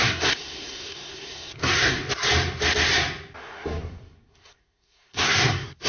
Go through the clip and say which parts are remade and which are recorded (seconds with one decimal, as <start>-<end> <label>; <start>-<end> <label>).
0.0-2.0 remade; 2.0-3.4 recorded; 3.4-5.9 remade